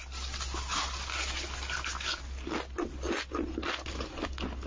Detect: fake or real real